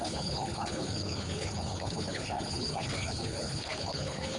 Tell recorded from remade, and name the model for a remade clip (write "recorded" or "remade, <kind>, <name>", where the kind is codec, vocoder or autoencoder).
remade, codec, HILCodec